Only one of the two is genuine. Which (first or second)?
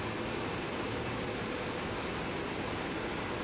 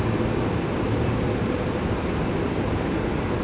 first